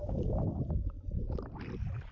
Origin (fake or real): fake